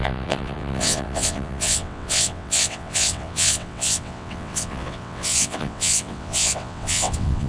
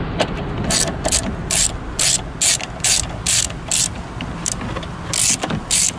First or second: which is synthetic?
first